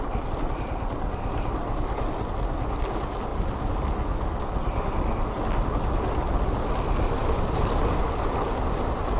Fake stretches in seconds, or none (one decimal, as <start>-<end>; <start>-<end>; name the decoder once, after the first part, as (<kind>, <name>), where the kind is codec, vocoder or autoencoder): 7.2-7.9 (vocoder, BigVGAN v2)